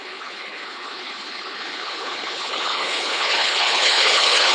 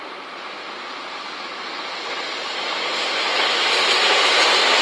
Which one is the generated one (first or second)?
first